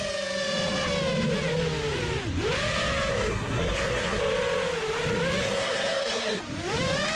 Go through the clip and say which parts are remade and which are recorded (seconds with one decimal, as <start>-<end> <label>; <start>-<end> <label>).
0.0-3.1 recorded; 3.1-4.2 remade; 4.2-5.4 recorded; 5.4-6.4 remade; 6.4-7.2 recorded